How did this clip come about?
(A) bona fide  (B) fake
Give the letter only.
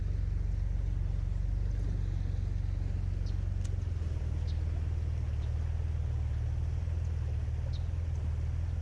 A